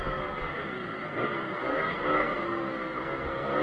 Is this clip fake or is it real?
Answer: fake